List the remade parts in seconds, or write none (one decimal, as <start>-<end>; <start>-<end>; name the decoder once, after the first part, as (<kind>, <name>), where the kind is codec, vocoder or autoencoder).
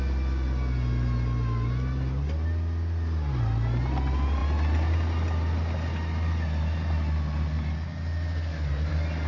none